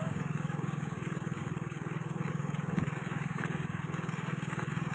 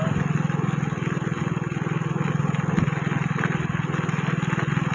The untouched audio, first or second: second